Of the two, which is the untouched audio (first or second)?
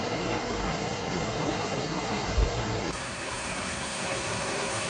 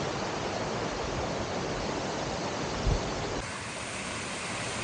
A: second